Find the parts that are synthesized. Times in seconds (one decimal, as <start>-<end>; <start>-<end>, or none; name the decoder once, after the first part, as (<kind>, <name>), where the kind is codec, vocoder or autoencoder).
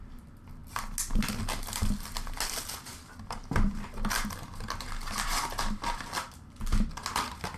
none